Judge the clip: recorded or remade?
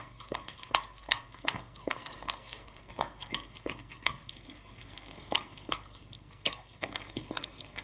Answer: remade